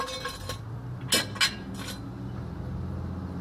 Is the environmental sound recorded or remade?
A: recorded